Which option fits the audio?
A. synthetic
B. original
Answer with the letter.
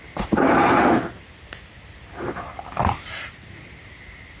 B